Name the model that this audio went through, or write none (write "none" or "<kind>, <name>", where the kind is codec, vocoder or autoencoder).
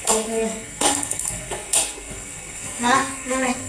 codec, SNAC